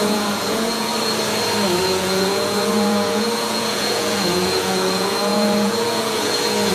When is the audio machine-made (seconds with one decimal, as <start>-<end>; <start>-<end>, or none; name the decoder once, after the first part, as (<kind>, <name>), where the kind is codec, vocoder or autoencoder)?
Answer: 0.0-0.9 (vocoder, Vocos); 1.8-6.7